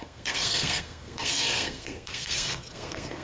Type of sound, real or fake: fake